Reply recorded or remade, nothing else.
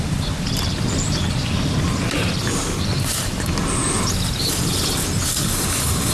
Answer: recorded